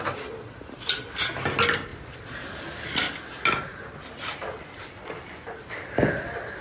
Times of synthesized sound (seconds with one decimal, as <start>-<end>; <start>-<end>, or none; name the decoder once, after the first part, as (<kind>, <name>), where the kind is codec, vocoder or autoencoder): 3.7-5.0 (vocoder, BigVGAN v2)